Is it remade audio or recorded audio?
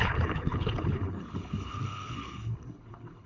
remade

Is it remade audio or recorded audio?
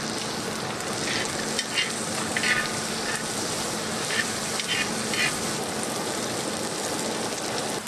recorded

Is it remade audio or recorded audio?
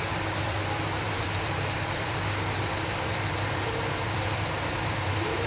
remade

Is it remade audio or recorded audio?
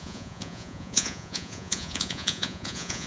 remade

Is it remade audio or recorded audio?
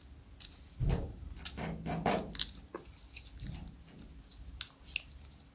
recorded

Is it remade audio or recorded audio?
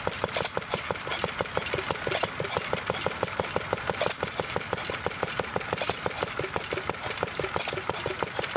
recorded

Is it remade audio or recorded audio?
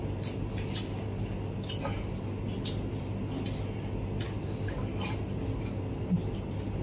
recorded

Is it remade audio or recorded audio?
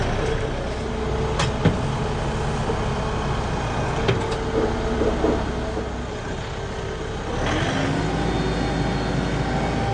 recorded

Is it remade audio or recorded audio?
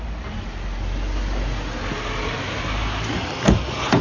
recorded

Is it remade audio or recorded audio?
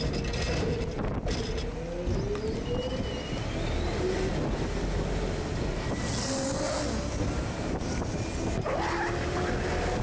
recorded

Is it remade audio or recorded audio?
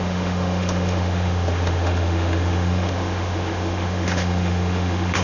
remade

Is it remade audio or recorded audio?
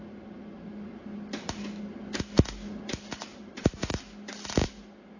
recorded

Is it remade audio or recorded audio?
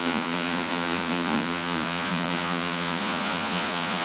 remade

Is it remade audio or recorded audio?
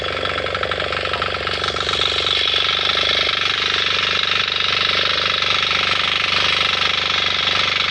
recorded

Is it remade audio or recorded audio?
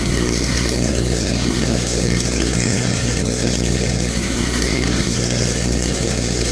remade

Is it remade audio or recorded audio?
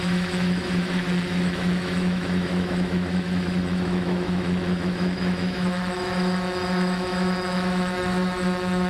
remade